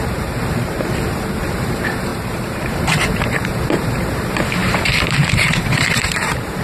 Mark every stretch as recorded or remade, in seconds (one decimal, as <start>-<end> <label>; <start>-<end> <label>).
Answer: 0.0-6.6 remade

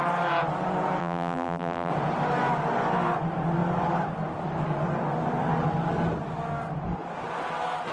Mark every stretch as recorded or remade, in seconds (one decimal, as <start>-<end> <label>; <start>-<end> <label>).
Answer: 0.0-1.0 recorded; 1.0-1.9 remade; 1.9-7.9 recorded

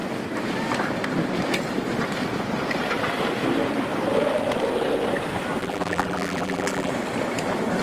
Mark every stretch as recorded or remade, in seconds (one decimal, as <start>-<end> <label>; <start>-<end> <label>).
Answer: 0.0-5.6 recorded; 5.6-6.9 remade; 6.9-7.8 recorded

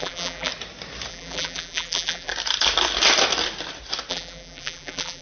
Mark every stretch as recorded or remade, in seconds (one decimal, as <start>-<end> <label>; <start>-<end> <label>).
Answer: 0.0-0.5 remade; 0.5-1.1 recorded; 1.1-2.3 remade; 2.3-4.1 recorded; 4.1-5.2 remade

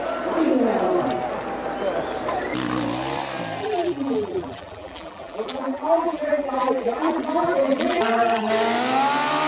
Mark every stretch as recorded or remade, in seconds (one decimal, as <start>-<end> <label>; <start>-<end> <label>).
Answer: 0.0-3.6 recorded; 3.6-8.5 remade; 8.5-9.5 recorded

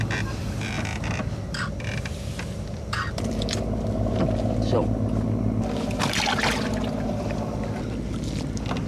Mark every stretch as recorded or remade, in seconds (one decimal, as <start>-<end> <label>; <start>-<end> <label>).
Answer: 0.0-8.9 recorded